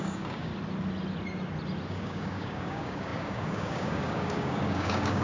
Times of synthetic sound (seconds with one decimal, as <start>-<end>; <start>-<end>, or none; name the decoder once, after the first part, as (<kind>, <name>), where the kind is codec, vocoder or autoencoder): 0.0-0.5 (codec, DAC); 1.9-5.2